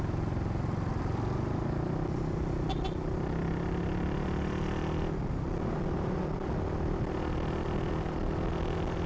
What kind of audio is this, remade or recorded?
recorded